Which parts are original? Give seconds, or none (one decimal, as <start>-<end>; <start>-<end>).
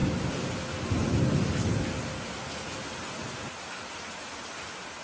0.0-5.0